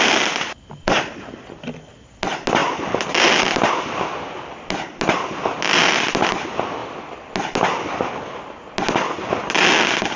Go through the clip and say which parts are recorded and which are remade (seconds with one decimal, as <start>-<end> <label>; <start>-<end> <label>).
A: 0.0-10.2 recorded